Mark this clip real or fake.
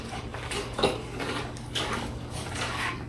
fake